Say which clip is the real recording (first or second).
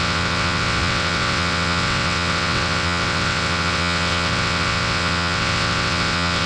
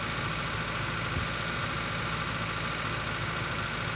second